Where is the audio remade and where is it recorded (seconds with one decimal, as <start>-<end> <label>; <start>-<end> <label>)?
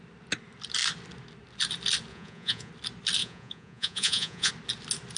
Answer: 0.0-2.1 recorded; 2.1-2.7 remade; 2.7-3.2 recorded; 3.2-4.5 remade; 4.5-5.2 recorded